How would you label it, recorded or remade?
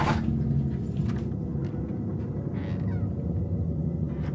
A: recorded